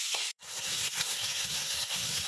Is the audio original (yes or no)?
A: no